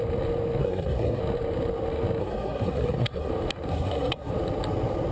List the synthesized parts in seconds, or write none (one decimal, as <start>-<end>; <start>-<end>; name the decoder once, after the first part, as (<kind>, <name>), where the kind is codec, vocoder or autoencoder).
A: 0.6-1.2 (codec, SNAC); 2.2-3.3; 3.7-4.3